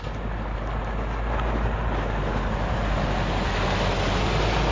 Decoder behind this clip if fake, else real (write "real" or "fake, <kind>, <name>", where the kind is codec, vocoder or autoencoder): real